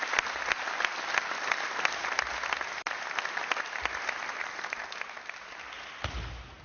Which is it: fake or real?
real